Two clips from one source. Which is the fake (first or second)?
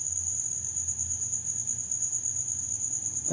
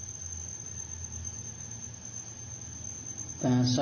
first